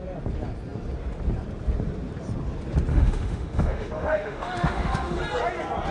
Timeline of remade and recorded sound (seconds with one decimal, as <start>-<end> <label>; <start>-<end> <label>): 0.0-2.9 recorded; 2.9-5.2 remade; 5.2-5.9 recorded